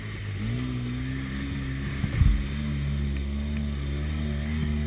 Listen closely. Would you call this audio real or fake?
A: real